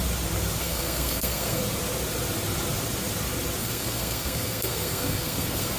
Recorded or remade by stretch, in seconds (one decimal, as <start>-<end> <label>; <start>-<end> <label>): 0.0-0.6 recorded; 0.6-1.6 remade; 1.6-3.6 recorded; 3.6-5.8 remade